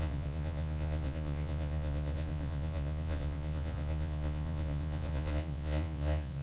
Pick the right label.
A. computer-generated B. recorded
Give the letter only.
A